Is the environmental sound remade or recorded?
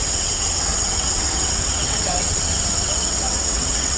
remade